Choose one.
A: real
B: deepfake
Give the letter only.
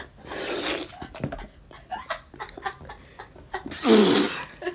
A